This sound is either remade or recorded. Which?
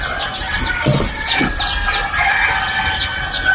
recorded